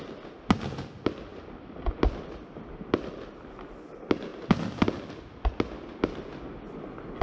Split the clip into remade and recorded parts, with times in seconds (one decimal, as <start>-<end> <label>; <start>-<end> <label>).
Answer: 0.0-7.2 recorded